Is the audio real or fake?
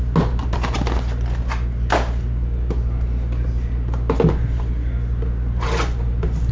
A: real